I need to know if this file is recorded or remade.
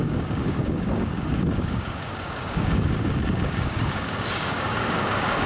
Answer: remade